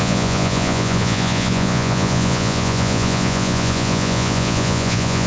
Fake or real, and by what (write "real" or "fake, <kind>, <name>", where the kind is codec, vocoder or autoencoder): fake, vocoder, Vocos